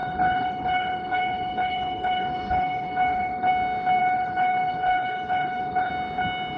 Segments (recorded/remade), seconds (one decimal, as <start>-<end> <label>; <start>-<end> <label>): 0.0-3.5 remade; 3.5-4.0 recorded; 4.0-5.9 remade; 5.9-6.6 recorded